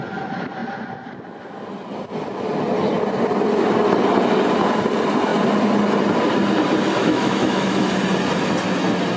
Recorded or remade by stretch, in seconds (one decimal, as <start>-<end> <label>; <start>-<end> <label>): 0.0-7.0 recorded; 7.0-7.9 remade; 7.9-9.2 recorded